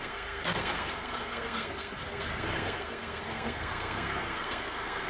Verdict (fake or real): fake